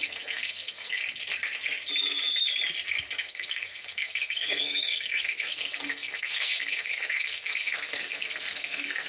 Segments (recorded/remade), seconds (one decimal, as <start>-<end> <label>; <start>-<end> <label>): 0.0-1.0 remade; 1.0-3.2 recorded; 3.2-9.1 remade